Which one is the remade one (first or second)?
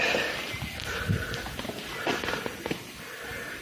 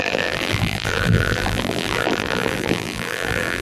second